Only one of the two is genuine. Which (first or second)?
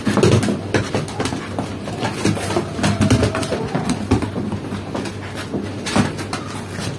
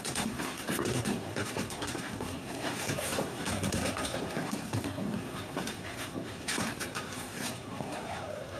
first